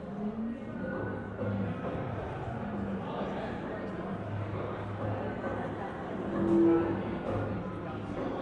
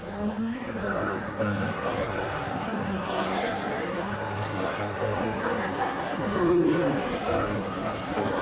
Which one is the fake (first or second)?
second